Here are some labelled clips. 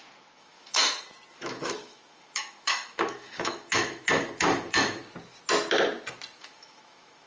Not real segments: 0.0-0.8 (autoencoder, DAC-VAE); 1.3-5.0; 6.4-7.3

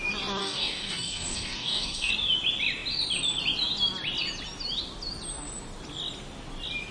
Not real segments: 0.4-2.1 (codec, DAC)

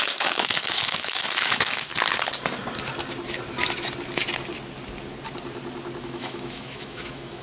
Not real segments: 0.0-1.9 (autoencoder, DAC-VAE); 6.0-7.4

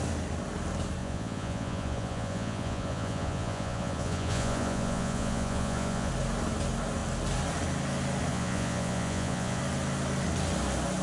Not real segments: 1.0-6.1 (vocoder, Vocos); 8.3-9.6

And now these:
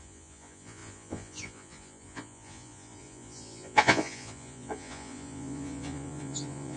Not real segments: 0.0-6.8 (vocoder, Vocos)

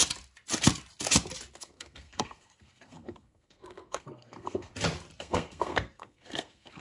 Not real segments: 1.6-4.7 (codec, SNAC); 5.2-6.8

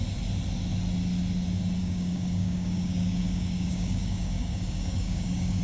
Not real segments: 1.8-5.6 (codec, DAC)

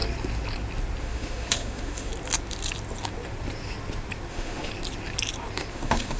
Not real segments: 1.0-2.1 (autoencoder, DAC-VAE); 4.3-4.7; 5.7-6.2